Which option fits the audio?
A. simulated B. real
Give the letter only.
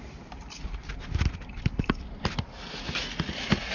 B